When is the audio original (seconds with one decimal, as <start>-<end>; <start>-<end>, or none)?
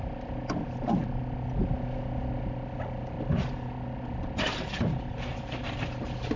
0.0-6.4